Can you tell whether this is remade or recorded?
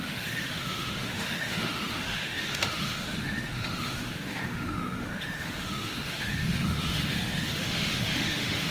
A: remade